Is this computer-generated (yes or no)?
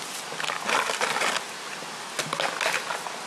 no